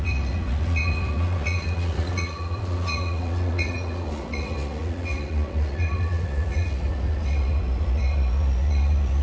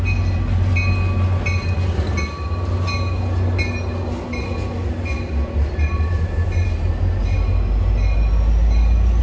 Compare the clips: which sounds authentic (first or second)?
second